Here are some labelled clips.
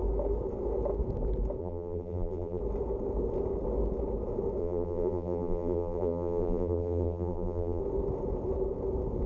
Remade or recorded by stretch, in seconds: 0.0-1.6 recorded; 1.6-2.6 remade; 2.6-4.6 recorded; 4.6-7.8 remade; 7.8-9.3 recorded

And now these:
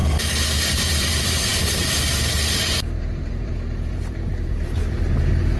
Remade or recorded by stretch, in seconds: 0.0-0.8 recorded; 0.8-5.6 remade